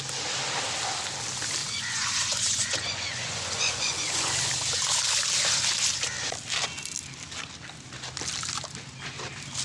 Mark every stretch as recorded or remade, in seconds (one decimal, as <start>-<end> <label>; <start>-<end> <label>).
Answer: 0.0-1.6 recorded; 1.6-4.5 remade; 4.5-9.6 recorded